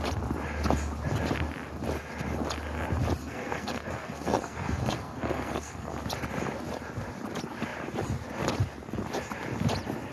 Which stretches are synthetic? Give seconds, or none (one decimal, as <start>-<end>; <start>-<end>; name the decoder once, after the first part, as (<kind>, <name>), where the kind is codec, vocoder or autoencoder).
3.2-5.9 (codec, SNAC)